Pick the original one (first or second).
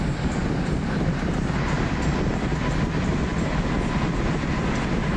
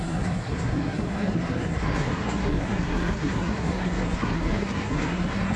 first